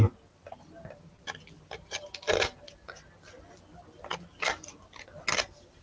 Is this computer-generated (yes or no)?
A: no